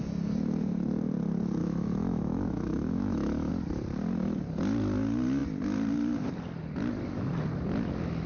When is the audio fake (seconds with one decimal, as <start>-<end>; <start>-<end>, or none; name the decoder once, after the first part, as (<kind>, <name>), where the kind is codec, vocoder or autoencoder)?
1.6-3.5 (autoencoder, DAC-VAE)